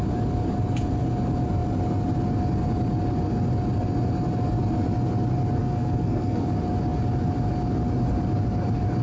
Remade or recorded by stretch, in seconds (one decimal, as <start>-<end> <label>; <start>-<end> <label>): 0.0-5.6 recorded; 5.6-6.4 remade; 6.4-9.0 recorded